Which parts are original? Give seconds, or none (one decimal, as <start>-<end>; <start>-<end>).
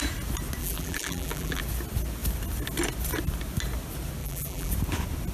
0.0-0.6; 1.6-4.2; 4.7-5.3